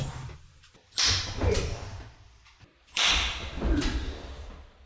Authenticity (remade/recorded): remade